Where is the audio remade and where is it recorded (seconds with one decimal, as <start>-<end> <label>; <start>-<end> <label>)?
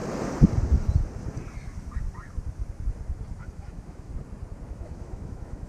0.0-3.4 recorded; 3.4-4.1 remade; 4.1-4.7 recorded; 4.7-5.7 remade